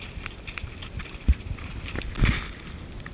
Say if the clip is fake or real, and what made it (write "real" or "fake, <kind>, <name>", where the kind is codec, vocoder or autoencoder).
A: real